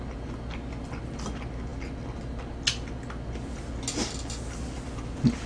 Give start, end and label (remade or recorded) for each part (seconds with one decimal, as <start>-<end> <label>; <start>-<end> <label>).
0.0-5.5 recorded